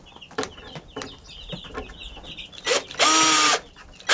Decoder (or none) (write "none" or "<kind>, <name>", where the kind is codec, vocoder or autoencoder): none